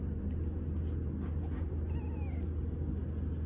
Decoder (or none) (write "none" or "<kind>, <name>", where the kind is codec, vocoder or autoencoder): none